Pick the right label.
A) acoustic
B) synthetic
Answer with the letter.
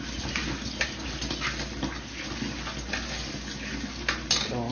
A